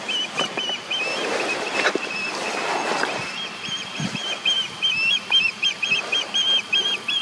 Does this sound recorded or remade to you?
remade